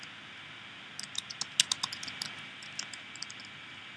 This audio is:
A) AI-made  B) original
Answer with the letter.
B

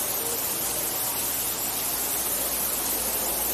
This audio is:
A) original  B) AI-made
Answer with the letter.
A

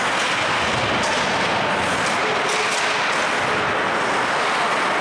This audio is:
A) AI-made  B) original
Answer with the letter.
B